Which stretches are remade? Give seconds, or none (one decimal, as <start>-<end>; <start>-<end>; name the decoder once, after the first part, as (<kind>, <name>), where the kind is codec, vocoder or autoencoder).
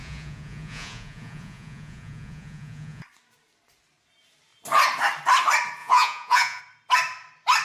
0.0-3.0 (vocoder, Vocos); 5.8-6.6